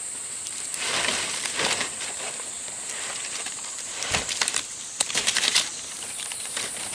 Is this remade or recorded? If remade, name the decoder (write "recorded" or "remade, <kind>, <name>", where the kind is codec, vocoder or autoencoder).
remade, vocoder, BigVGAN v2